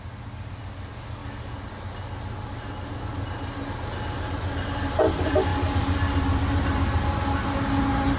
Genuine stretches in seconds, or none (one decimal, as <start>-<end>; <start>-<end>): 0.0-8.2